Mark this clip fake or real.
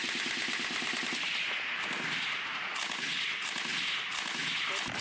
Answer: real